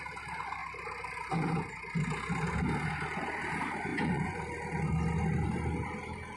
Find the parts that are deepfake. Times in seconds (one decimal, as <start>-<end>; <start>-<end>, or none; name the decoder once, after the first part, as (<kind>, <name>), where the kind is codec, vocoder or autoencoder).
3.9-4.4 (vocoder, Vocos)